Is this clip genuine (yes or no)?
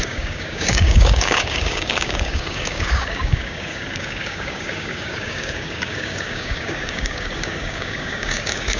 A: no